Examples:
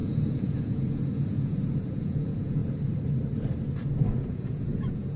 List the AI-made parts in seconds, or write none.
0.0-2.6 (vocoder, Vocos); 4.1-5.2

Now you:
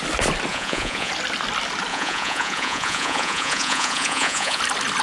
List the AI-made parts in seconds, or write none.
0.5-1.1 (vocoder, Vocos); 1.9-4.6

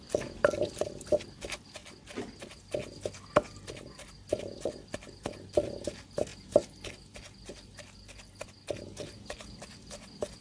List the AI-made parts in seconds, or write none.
none

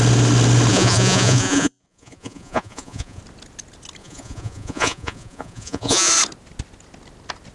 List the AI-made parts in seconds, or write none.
0.7-3.2 (vocoder, Vocos); 4.0-6.1

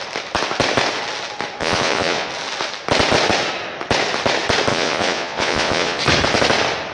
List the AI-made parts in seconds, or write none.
1.6-2.3 (vocoder, Vocos); 4.7-6.0